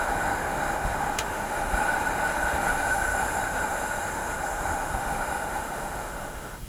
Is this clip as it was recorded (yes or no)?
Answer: no